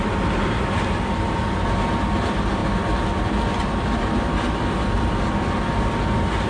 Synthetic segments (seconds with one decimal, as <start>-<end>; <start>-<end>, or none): none